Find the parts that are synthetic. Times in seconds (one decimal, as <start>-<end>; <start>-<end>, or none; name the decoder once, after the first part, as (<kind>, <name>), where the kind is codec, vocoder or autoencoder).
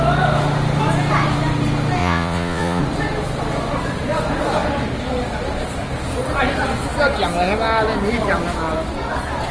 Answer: 2.0-2.8 (vocoder, Vocos)